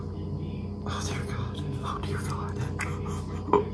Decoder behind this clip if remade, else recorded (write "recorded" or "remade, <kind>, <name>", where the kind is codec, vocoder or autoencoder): recorded